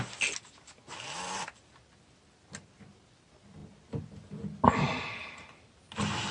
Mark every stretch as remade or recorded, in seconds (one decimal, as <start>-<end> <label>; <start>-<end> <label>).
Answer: 0.0-6.3 recorded